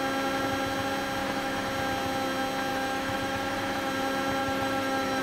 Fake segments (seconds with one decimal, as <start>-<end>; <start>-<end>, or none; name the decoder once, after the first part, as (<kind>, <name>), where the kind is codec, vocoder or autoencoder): 1.2-1.7 (autoencoder, DAC-VAE); 2.7-3.9; 4.4-5.2